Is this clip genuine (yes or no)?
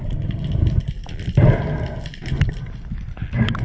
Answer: yes